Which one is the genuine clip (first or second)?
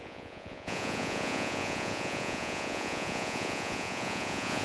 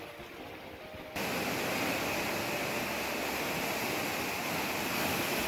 second